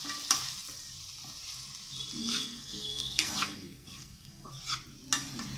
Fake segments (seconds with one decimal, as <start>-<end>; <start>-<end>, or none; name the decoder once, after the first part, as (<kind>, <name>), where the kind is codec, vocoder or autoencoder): 2.2-4.5 (codec, SNAC)